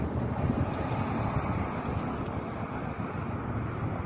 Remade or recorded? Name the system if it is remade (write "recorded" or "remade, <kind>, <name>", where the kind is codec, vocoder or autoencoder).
recorded